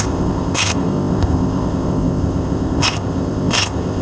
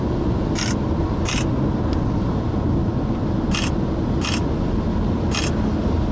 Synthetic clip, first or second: first